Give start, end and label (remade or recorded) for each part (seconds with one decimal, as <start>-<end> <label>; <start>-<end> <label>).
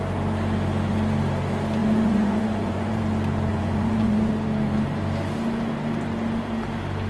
0.0-1.8 recorded; 1.8-3.0 remade; 3.0-3.5 recorded; 3.5-4.3 remade; 4.3-7.1 recorded